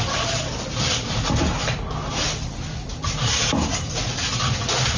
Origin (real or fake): real